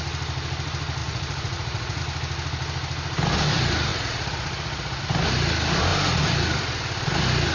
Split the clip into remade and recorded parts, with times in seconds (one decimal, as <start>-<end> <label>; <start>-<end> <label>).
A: 0.0-1.0 recorded; 1.0-2.0 remade; 2.0-3.9 recorded; 3.9-5.0 remade; 5.0-7.5 recorded